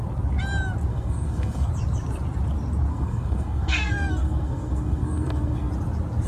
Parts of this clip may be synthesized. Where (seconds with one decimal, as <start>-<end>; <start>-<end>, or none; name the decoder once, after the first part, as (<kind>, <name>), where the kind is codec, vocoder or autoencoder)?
0.9-1.7 (codec, SNAC); 2.9-5.7